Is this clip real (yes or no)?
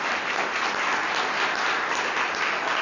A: yes